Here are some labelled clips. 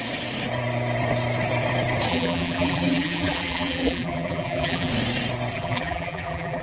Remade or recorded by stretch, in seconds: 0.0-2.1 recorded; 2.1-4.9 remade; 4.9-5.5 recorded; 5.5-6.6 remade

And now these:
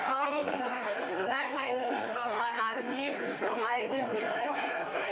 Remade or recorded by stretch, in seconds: 0.0-5.1 remade